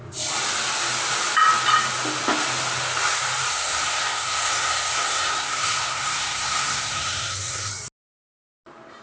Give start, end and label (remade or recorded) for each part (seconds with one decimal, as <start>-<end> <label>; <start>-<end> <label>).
0.0-3.5 recorded; 3.5-7.7 remade; 7.7-9.0 recorded